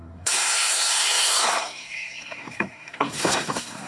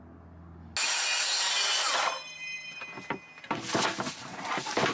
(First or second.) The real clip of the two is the second